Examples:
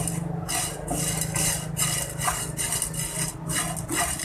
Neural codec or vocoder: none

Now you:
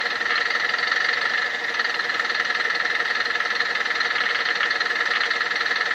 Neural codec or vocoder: none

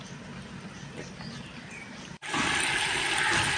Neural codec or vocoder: none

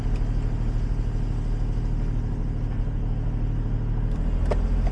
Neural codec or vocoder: none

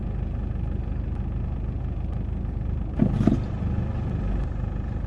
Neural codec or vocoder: none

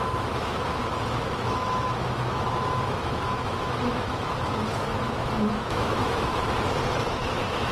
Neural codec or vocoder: autoencoder, DAC-VAE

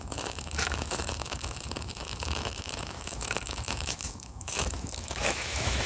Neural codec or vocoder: autoencoder, DAC-VAE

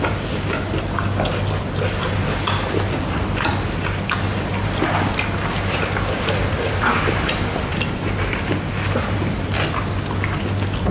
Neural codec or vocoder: none